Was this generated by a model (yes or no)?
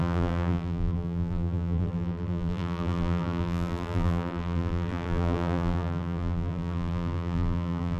yes